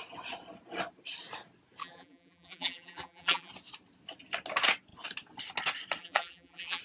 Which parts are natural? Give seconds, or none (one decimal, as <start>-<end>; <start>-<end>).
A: 0.0-1.8; 3.5-6.0